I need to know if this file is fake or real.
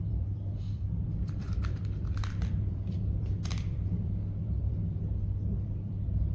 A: fake